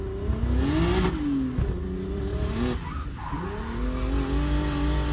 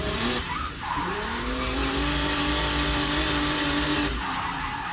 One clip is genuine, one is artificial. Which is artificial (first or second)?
second